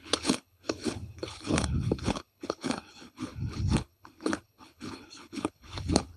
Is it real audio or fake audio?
fake